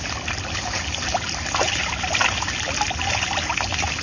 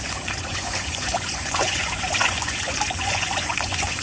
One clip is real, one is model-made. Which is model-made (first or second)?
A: second